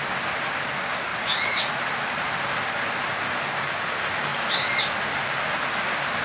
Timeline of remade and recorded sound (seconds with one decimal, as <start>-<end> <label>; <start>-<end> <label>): 0.0-1.1 recorded; 1.1-1.8 remade; 1.8-6.2 recorded